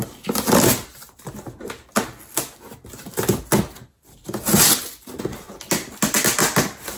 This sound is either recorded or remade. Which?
recorded